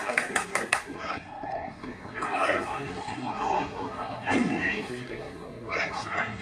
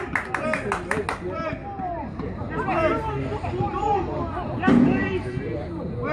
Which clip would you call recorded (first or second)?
second